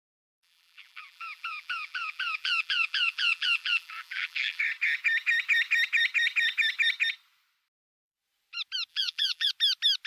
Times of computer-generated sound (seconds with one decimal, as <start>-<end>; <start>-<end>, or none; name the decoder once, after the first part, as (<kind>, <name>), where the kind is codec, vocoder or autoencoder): 0.4-4.6 (vocoder, BigVGAN v2); 8.9-9.5